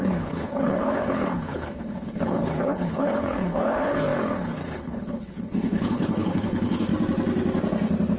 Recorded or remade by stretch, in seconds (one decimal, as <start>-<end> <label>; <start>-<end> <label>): 0.0-6.9 remade; 6.9-8.2 recorded